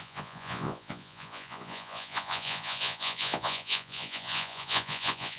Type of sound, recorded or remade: remade